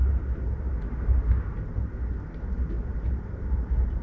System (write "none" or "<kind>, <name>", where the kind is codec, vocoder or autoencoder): none